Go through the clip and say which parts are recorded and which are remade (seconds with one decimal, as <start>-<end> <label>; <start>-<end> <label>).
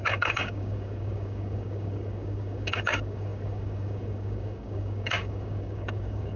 0.0-6.4 remade